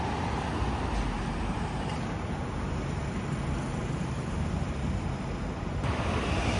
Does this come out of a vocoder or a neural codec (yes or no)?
yes